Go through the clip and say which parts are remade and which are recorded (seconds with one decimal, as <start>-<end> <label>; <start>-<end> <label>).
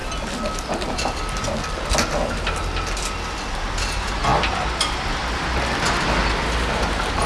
0.0-7.3 recorded